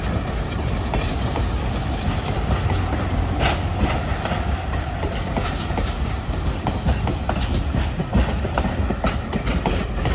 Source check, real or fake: real